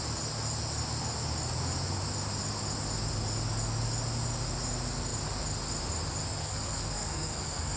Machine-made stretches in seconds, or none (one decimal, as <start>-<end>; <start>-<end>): 6.4-7.8